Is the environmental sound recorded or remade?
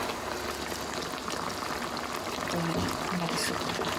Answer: recorded